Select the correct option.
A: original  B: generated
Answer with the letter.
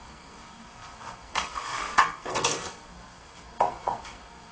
B